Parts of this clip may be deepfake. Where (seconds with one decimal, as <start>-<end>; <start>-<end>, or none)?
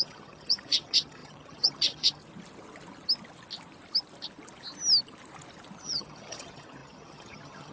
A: 0.0-2.2; 5.8-7.7